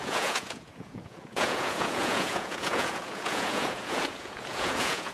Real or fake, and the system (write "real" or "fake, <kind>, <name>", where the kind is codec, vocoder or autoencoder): fake, vocoder, Vocos